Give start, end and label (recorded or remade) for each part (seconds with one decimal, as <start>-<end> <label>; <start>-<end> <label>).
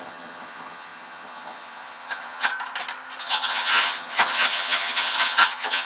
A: 0.0-2.5 remade; 2.5-3.2 recorded; 3.2-5.8 remade